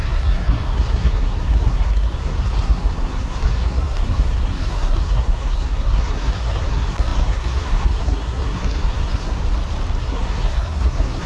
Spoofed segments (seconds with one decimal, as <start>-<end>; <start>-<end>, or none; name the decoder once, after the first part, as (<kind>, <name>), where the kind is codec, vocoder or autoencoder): 0.0-9.4 (codec, SNAC); 10.0-11.3